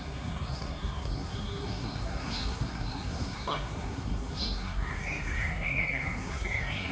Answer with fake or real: fake